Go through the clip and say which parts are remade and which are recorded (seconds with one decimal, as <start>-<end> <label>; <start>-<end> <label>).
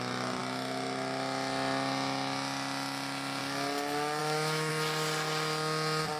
0.0-4.2 recorded; 4.2-4.7 remade; 4.7-6.2 recorded